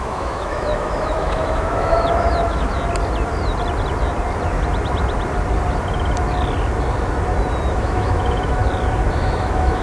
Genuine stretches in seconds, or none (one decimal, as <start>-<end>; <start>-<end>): 2.7-7.7; 8.6-9.2